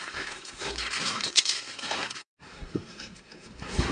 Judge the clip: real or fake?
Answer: fake